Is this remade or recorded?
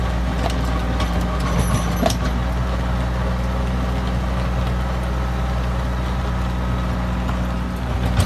recorded